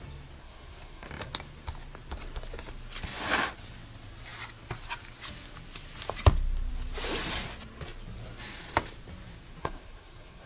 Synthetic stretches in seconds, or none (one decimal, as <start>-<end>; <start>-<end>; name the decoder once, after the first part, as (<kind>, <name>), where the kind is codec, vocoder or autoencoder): 0.4-1.1 (codec, SNAC); 9.6-10.5